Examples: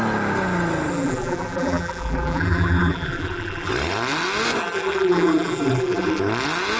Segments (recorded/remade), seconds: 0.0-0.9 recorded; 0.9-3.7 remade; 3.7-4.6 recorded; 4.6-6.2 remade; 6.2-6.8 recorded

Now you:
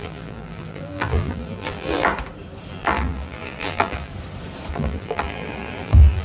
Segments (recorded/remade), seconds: 0.0-2.1 remade; 2.1-2.7 recorded; 2.7-4.1 remade; 4.1-4.7 recorded; 4.7-6.2 remade

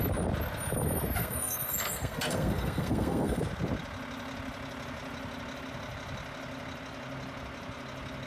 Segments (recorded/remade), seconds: 0.0-1.2 recorded; 1.2-3.4 remade; 3.4-8.3 recorded